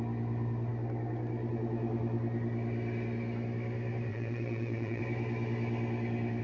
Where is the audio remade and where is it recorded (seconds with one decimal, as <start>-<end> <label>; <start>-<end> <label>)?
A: 0.0-4.1 recorded; 4.1-5.0 remade; 5.0-6.4 recorded